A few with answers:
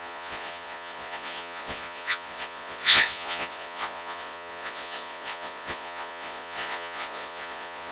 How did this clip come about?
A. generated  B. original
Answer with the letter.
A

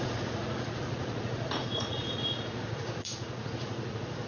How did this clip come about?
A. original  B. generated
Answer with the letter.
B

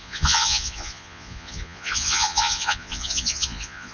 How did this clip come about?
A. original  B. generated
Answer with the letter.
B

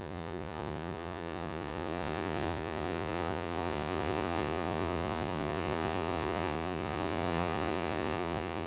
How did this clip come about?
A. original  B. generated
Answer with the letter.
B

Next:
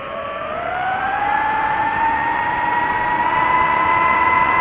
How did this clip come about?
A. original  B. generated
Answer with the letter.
B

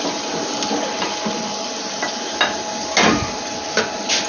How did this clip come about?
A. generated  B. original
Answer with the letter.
B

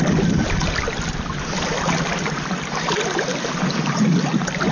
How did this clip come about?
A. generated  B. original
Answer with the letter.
B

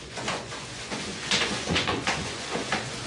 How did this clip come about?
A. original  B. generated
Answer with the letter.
B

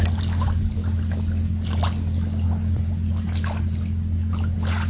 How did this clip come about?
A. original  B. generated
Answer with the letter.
A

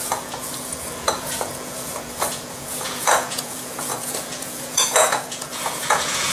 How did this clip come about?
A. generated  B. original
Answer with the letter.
A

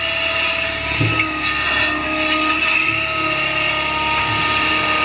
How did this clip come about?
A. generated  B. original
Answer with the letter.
B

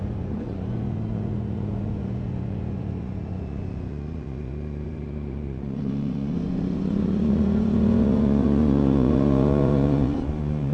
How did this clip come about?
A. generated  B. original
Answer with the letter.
A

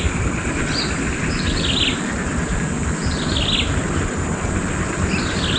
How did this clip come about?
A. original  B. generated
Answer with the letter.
A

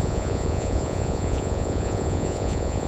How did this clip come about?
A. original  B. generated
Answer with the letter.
B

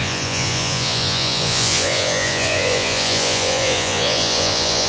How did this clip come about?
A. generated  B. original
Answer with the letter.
A